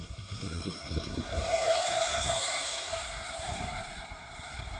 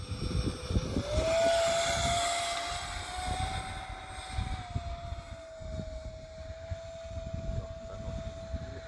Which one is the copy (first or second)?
first